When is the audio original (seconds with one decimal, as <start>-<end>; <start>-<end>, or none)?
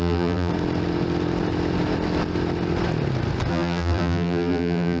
0.5-3.5